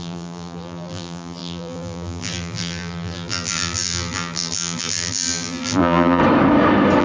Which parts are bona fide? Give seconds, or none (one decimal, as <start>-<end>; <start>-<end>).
6.2-7.0